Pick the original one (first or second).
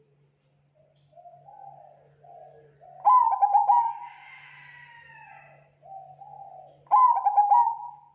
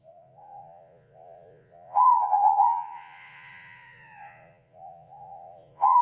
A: first